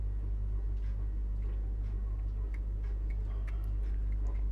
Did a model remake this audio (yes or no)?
no